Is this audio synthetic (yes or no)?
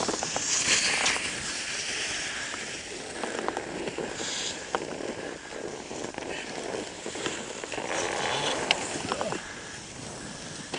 no